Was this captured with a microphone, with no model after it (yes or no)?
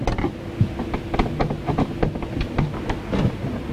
yes